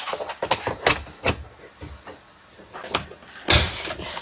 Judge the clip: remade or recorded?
recorded